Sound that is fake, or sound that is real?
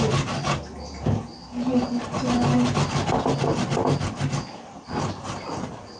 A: real